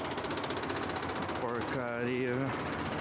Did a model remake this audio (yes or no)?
no